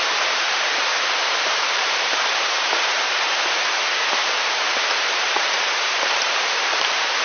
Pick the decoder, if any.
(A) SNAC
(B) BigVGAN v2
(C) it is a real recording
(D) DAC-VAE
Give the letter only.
B